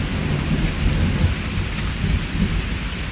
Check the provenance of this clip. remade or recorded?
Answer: recorded